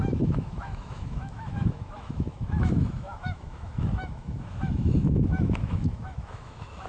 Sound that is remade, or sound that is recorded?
remade